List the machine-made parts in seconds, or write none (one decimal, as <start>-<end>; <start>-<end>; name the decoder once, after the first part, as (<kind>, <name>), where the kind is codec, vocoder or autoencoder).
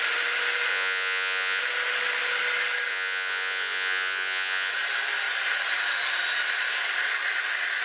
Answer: 0.7-1.6 (vocoder, Vocos); 2.9-4.7